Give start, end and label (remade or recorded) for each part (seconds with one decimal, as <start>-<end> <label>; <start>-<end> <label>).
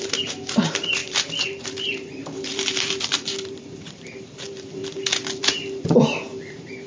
0.0-4.8 remade; 4.8-5.4 recorded; 5.4-6.9 remade